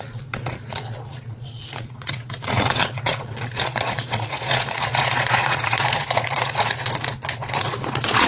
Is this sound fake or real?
fake